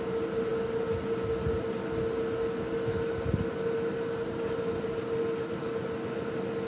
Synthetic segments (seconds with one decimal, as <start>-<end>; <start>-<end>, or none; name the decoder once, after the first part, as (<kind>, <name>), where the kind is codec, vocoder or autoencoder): none